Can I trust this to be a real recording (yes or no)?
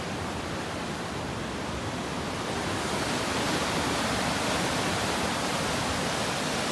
yes